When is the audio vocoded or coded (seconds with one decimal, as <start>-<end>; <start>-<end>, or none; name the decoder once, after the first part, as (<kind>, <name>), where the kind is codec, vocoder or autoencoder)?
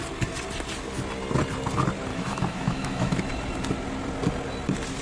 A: 2.1-3.2 (autoencoder, DAC-VAE)